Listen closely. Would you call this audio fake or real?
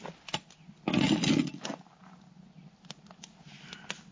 real